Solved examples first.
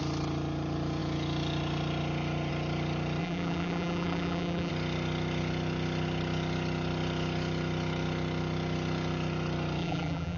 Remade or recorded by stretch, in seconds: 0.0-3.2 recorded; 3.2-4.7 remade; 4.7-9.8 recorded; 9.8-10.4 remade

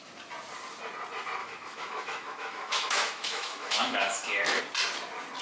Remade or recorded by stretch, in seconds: 0.0-1.4 recorded; 1.4-4.6 remade; 4.6-5.4 recorded

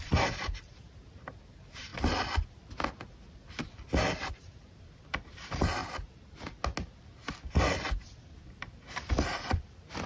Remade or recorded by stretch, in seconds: 0.0-1.9 remade; 1.9-4.3 recorded; 4.3-5.8 remade; 5.8-8.4 recorded; 8.4-10.1 remade